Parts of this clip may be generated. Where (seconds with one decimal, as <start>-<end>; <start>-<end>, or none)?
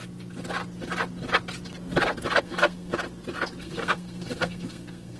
2.4-2.9; 3.6-5.2